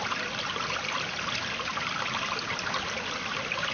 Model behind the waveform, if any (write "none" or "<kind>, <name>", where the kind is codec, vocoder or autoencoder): none